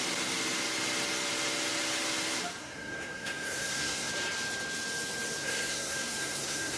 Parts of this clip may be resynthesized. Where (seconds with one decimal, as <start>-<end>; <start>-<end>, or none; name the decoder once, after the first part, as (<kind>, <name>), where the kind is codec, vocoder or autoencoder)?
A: 2.6-4.1 (codec, SNAC); 5.4-6.8